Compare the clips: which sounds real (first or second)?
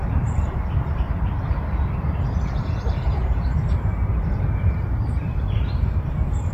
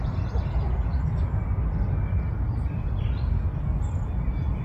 second